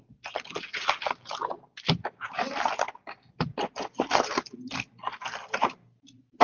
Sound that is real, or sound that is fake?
real